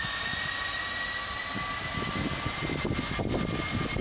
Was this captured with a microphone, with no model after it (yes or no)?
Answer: yes